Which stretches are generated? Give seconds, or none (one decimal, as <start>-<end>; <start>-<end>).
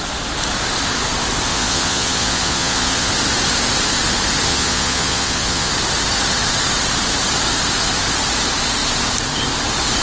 1.5-3.1; 4.5-5.7